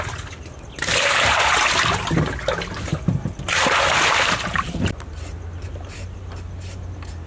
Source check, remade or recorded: recorded